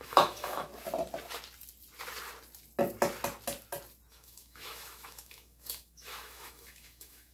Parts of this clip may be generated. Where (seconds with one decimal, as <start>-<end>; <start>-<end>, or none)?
0.0-0.7; 4.1-7.3